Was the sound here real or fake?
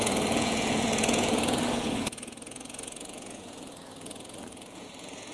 fake